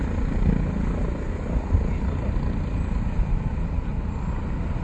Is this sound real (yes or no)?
yes